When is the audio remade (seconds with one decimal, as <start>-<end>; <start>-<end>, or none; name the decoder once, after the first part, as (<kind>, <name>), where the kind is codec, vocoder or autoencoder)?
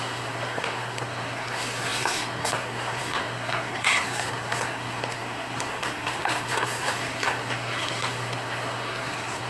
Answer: 0.0-9.5 (codec, SNAC)